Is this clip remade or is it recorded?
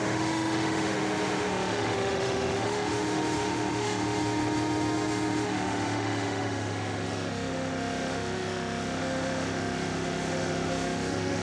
remade